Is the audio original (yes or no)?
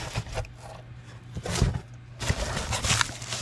yes